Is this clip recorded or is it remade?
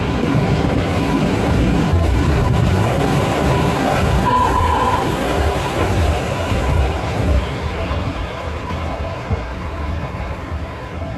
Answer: remade